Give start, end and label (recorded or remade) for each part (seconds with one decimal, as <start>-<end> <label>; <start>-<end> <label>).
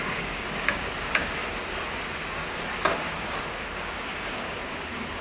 0.0-1.4 remade; 1.4-3.4 recorded; 3.4-5.2 remade